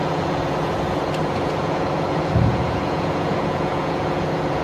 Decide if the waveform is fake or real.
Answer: fake